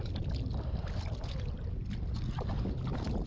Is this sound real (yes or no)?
yes